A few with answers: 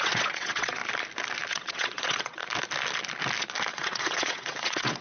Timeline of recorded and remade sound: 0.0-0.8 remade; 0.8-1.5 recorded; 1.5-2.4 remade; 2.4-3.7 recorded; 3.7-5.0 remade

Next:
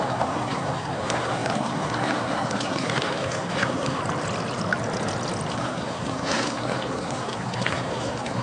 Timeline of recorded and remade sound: 0.0-4.0 remade; 4.0-5.5 recorded; 5.5-8.4 remade

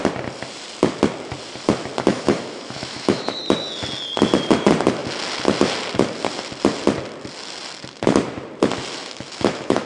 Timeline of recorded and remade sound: 0.0-2.1 recorded; 2.1-3.4 remade; 3.4-9.0 recorded; 9.0-9.9 remade